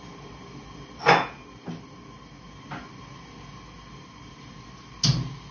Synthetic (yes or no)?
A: no